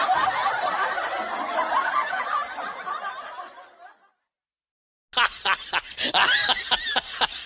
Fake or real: real